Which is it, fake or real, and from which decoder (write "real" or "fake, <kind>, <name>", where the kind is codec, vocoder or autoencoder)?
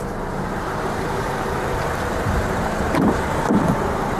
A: fake, vocoder, BigVGAN v2